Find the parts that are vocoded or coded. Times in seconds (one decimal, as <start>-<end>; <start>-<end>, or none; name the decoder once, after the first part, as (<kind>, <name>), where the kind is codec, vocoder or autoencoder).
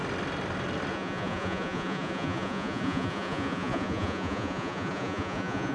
0.9-5.7 (vocoder, Vocos)